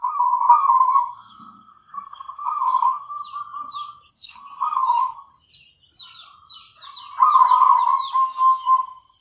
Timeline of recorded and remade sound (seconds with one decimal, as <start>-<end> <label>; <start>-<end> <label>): 0.0-3.2 remade; 3.2-4.1 recorded; 4.1-5.3 remade; 5.3-8.2 recorded; 8.2-9.2 remade